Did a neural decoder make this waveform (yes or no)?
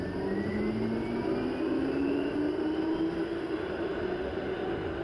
no